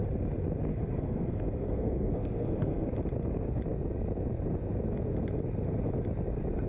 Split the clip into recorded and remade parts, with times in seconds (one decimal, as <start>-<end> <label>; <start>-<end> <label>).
0.0-0.7 recorded; 0.7-2.9 remade; 2.9-6.7 recorded